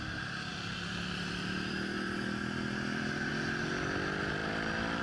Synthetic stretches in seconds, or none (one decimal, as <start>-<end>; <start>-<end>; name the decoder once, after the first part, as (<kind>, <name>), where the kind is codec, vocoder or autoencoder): 0.5-3.3 (vocoder, BigVGAN v2)